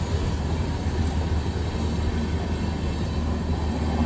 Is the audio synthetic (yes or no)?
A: no